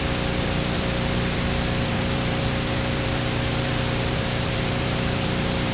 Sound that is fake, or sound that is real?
fake